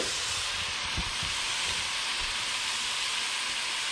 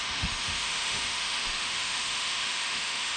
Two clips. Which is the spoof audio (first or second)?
second